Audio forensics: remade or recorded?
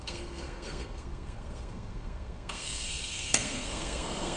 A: remade